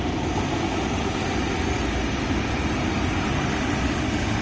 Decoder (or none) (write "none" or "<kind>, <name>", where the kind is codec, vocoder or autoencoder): none